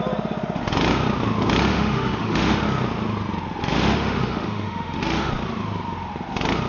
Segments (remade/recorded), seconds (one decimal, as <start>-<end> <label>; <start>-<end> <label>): 0.0-1.7 recorded; 1.7-2.6 remade; 2.6-3.6 recorded; 3.6-5.3 remade; 5.3-6.7 recorded